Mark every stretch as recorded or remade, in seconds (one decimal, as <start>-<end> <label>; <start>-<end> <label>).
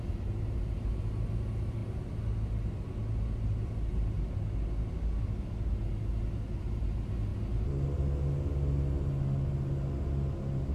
0.0-10.7 recorded